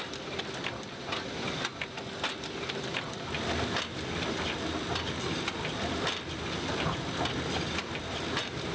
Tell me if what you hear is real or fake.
real